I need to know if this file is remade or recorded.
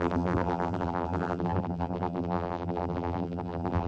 remade